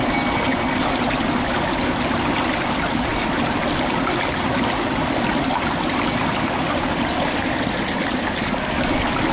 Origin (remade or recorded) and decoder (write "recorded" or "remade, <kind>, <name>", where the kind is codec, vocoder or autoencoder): recorded